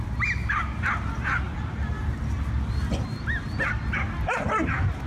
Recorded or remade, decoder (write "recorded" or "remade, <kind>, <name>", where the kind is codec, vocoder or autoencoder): recorded